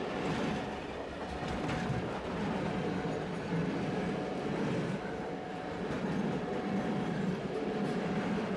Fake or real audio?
fake